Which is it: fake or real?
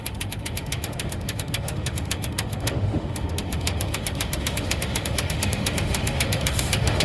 fake